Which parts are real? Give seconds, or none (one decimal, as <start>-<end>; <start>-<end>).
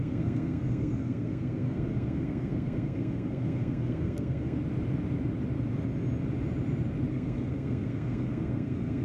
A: 4.6-7.1